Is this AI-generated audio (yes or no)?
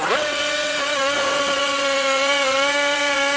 yes